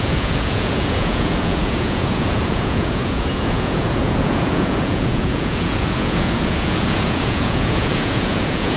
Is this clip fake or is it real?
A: fake